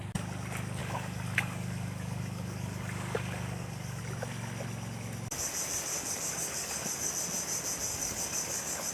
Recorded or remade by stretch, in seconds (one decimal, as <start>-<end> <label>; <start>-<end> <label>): 0.0-0.8 recorded; 0.8-4.0 remade; 4.0-5.9 recorded; 5.9-7.1 remade; 7.1-7.9 recorded; 7.9-8.9 remade